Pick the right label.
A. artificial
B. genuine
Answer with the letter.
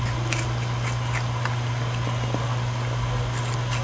B